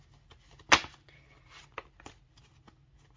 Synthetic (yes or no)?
no